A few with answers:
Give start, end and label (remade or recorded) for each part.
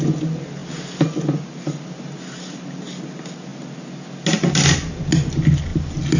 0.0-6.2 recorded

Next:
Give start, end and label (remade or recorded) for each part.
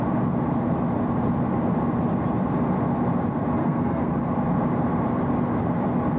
0.0-3.6 recorded; 3.6-4.1 remade; 4.1-6.2 recorded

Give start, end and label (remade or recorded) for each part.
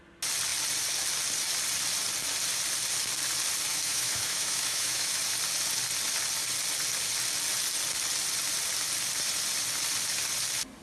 0.0-3.7 recorded; 3.7-5.2 remade; 5.2-10.8 recorded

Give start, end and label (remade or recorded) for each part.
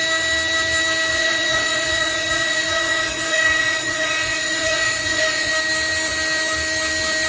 0.0-1.1 recorded; 1.1-5.5 remade; 5.5-7.3 recorded